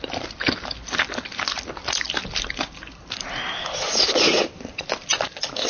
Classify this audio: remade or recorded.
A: recorded